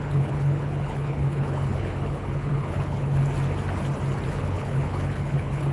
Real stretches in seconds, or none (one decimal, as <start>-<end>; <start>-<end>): 3.2-4.3